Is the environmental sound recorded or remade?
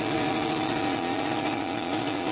remade